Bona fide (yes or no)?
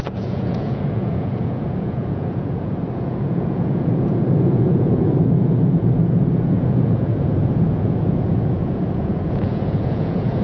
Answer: no